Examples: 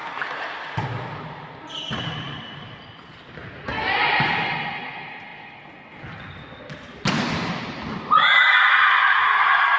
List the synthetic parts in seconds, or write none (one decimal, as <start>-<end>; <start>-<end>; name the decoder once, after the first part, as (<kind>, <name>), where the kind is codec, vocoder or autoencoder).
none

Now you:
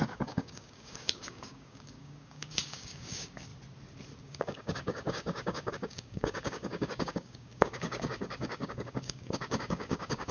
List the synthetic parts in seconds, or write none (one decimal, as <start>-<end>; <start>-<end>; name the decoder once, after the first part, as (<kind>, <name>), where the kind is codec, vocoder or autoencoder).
0.0-3.5 (codec, DAC); 4.2-10.3

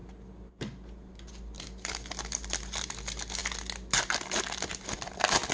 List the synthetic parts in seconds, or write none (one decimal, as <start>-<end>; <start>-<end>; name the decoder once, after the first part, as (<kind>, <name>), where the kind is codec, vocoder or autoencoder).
none